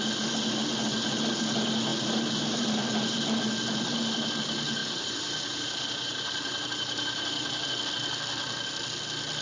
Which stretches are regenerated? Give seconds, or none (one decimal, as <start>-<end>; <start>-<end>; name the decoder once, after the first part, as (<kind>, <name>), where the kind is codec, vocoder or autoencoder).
1.9-2.8 (vocoder, BigVGAN v2); 4.8-7.8